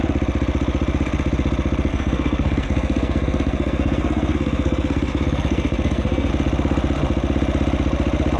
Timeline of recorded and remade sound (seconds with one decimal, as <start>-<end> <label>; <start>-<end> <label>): 0.0-1.9 recorded; 1.9-6.3 remade; 6.3-8.4 recorded